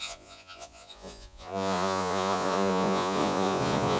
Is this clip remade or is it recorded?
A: remade